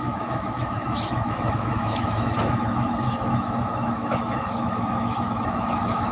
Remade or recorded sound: remade